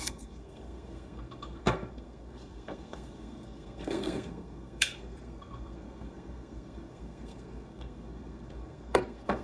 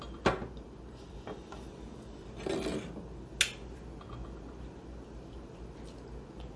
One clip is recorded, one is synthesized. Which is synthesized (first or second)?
first